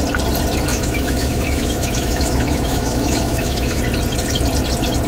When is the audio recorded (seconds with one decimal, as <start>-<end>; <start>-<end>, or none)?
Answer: 0.0-0.7; 3.8-5.1